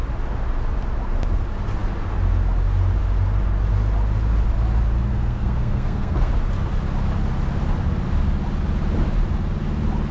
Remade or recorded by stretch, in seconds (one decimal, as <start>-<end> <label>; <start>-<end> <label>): 0.0-5.1 recorded; 5.1-6.3 remade; 6.3-10.1 recorded